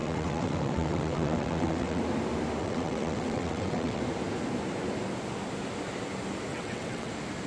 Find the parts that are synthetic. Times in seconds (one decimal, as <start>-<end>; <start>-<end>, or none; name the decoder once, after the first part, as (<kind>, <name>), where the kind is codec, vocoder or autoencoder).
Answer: 0.0-2.0 (vocoder, WaveNeXt); 2.6-4.0; 6.5-7.1